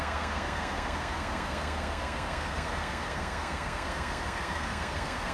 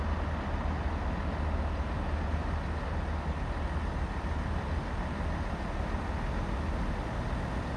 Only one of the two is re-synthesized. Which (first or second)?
first